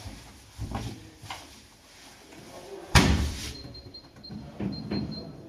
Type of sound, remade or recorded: remade